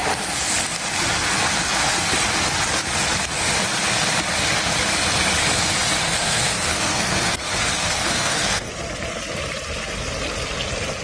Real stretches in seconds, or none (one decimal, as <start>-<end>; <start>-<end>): 0.0-6.0; 8.7-11.0